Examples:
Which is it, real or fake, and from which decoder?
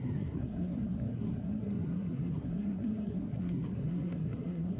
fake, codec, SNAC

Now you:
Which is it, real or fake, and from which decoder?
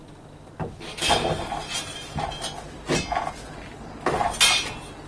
real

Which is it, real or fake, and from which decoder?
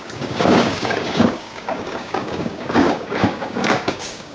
fake, codec, DAC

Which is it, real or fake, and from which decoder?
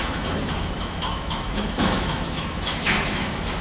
fake, autoencoder, DAC-VAE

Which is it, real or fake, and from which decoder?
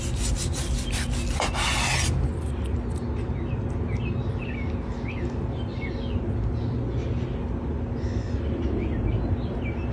real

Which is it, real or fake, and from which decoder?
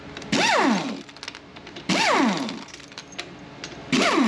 real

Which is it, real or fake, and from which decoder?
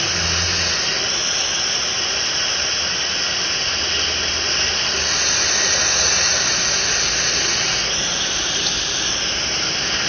real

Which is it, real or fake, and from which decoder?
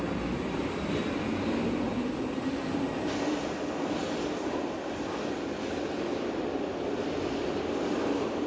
real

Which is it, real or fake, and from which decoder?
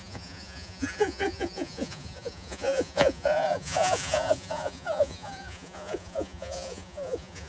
fake, vocoder, Vocos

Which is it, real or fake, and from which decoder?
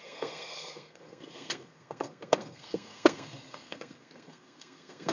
fake, codec, SNAC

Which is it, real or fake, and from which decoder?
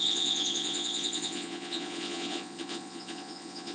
fake, vocoder, Vocos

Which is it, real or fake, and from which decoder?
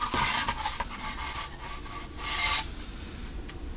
real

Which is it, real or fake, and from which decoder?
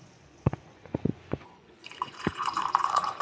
fake, vocoder, Vocos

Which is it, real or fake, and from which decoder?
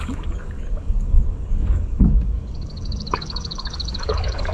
fake, codec, DAC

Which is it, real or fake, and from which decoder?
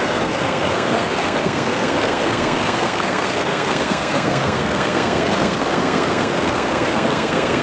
fake, codec, SNAC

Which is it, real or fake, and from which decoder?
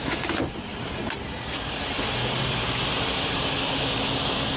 real